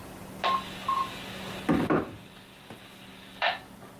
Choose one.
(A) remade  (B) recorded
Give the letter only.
B